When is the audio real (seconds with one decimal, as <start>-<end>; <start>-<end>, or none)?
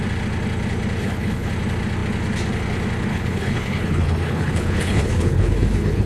0.0-1.0; 1.5-3.1